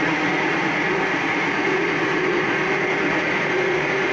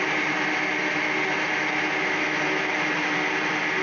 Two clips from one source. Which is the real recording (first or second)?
second